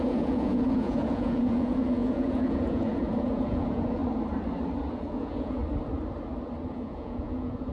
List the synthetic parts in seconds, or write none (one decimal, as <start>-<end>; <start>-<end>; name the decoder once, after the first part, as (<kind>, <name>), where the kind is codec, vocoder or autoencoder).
0.0-4.0 (vocoder, Vocos); 4.9-5.6; 6.7-7.7